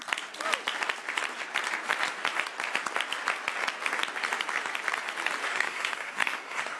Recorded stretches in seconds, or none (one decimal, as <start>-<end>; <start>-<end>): 0.0-5.4